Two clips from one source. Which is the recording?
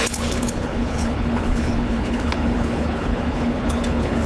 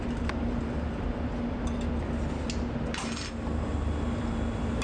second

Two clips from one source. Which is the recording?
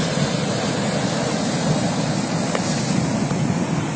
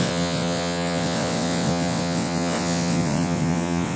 first